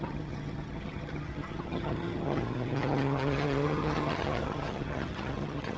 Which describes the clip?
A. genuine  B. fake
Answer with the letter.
B